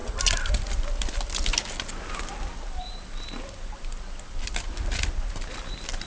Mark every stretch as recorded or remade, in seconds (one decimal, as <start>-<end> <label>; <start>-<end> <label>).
0.0-6.1 recorded